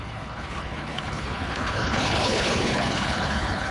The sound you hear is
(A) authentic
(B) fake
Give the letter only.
B